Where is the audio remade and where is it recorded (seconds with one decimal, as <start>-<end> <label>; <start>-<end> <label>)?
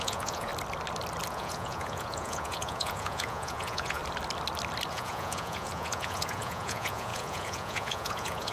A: 0.0-0.5 remade; 0.5-1.3 recorded; 1.3-4.0 remade; 4.0-4.9 recorded; 4.9-8.5 remade